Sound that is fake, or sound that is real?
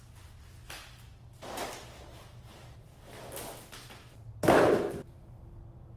real